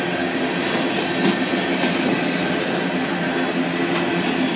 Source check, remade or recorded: recorded